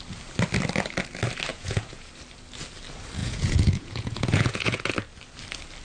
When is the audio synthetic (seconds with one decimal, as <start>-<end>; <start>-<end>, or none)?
1.5-2.1; 3.2-4.9